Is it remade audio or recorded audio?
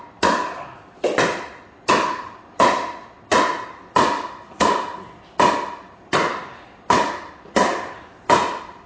recorded